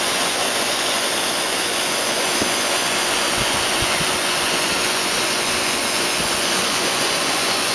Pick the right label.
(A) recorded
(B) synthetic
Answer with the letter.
B